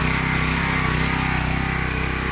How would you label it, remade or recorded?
recorded